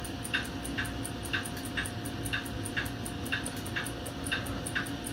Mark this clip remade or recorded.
recorded